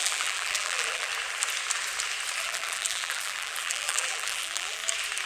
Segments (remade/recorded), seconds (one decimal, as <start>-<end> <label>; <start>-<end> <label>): 0.0-1.1 remade; 1.1-2.4 recorded; 2.4-4.8 remade; 4.8-5.3 recorded